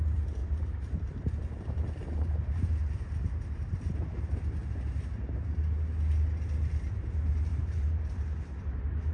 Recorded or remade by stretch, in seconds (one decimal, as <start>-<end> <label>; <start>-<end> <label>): 0.0-0.4 recorded; 0.4-3.9 remade; 3.9-7.5 recorded; 7.5-8.6 remade; 8.6-9.1 recorded